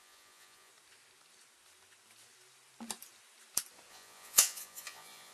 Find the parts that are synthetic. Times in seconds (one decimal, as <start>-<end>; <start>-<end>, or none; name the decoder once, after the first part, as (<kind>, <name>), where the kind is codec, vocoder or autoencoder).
0.0-0.7 (vocoder, Vocos); 3.9-5.3